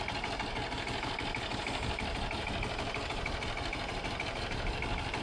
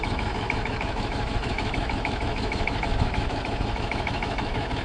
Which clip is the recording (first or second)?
first